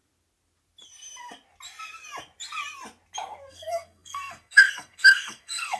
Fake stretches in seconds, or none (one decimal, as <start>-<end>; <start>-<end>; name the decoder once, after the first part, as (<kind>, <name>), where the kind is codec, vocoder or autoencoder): 3.5-5.8 (codec, SNAC)